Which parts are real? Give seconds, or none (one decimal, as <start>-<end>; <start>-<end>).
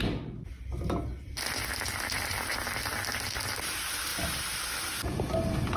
0.0-4.1